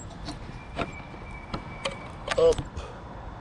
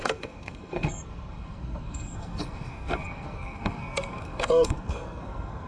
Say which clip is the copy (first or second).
second